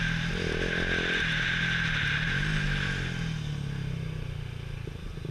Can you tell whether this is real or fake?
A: real